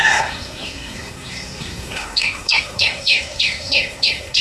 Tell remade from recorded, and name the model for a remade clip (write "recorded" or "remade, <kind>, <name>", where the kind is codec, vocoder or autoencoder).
remade, codec, SNAC